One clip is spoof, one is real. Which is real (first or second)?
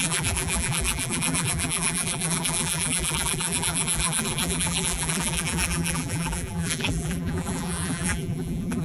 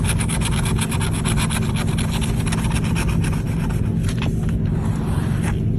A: second